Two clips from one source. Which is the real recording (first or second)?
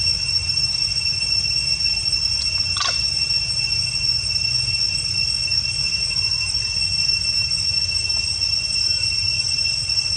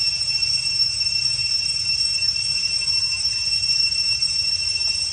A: first